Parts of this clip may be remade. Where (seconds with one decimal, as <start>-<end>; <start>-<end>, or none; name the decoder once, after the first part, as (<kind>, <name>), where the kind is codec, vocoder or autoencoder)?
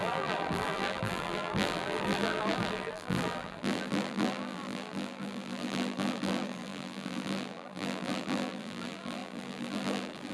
0.0-10.3 (vocoder, BigVGAN v2)